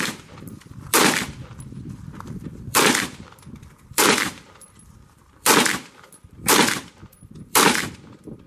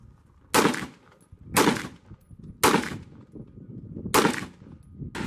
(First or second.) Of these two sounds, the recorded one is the second